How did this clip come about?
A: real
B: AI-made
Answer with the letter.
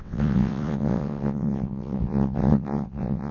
B